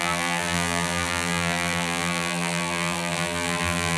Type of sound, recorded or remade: remade